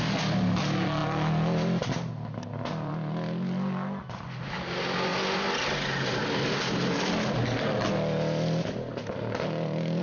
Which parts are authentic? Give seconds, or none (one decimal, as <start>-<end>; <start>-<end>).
0.0-10.0